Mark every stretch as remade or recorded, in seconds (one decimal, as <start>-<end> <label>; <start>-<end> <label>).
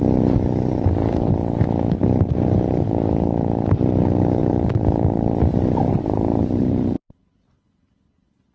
0.0-4.4 recorded; 4.4-5.9 remade; 5.9-8.5 recorded